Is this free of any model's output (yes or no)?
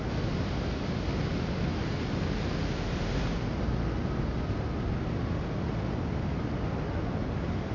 yes